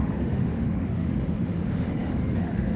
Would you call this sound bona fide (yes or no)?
no